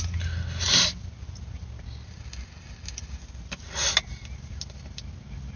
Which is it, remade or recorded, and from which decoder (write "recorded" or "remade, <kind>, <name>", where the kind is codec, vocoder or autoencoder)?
recorded